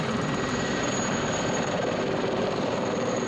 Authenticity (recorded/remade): remade